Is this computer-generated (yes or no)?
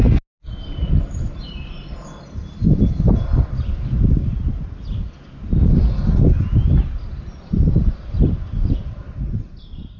no